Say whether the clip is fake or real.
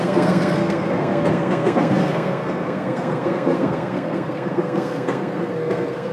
fake